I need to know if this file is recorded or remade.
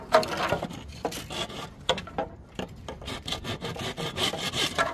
recorded